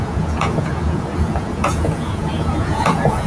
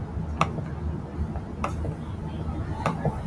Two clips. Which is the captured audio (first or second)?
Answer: second